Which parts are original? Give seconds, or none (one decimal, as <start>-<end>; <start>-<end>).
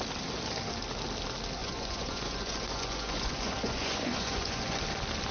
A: 0.0-1.6; 4.8-5.3